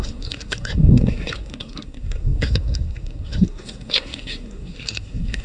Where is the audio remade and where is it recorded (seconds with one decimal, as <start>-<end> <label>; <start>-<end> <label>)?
0.0-5.4 remade

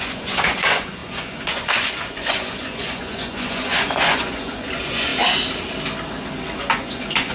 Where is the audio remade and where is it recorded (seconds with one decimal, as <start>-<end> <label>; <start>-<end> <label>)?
0.0-5.1 remade; 5.1-6.6 recorded; 6.6-7.3 remade

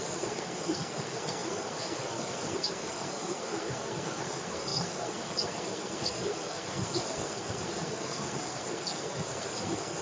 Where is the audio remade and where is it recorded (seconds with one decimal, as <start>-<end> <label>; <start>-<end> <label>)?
0.0-10.0 remade

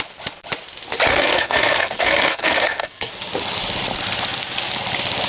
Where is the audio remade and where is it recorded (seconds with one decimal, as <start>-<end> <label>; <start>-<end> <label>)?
0.0-1.1 recorded; 1.1-3.1 remade; 3.1-5.3 recorded

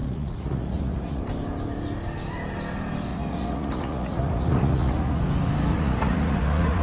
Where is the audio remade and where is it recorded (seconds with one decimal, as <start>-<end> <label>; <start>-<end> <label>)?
0.0-1.2 remade; 1.2-3.1 recorded; 3.1-5.2 remade; 5.2-5.7 recorded; 5.7-6.8 remade